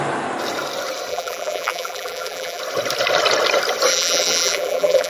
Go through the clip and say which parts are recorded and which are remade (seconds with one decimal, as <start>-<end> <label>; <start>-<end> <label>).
0.0-1.1 recorded; 1.1-2.6 remade; 2.6-3.9 recorded; 3.9-5.1 remade